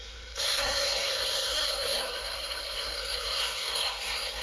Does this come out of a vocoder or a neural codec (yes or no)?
yes